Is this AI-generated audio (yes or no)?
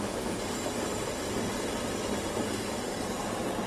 no